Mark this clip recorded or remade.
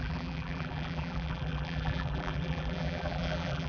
remade